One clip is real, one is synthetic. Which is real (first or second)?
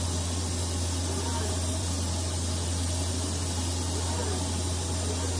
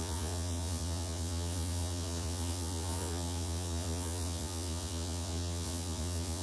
first